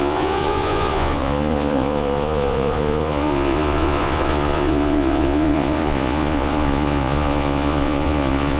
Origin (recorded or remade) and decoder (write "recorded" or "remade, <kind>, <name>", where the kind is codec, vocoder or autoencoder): remade, vocoder, Vocos